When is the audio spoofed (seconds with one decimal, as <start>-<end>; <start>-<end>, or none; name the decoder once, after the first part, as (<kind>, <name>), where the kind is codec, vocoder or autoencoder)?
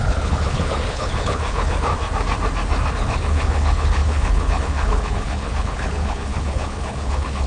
0.0-1.9 (codec, HILCodec); 2.9-7.5